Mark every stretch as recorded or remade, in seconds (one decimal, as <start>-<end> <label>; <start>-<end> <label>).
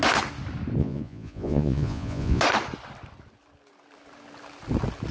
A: 0.0-0.8 recorded; 0.8-2.4 remade; 2.4-5.1 recorded